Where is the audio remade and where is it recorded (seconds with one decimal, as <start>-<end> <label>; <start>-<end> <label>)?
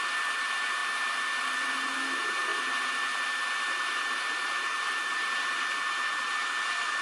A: 0.0-7.0 recorded